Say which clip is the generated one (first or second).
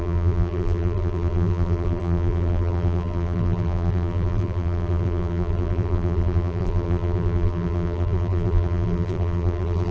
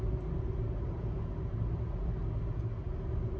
first